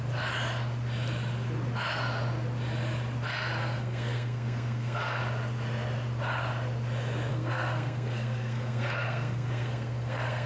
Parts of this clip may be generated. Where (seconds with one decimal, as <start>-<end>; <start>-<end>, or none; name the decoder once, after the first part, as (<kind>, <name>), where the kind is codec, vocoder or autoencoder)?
3.6-5.2 (codec, SNAC); 7.3-10.5